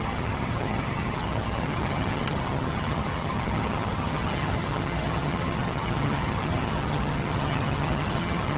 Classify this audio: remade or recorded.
remade